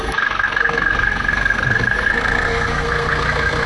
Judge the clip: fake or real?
fake